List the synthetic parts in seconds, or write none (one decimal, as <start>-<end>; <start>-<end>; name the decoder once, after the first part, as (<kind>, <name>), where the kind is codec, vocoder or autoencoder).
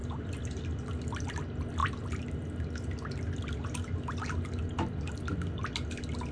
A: none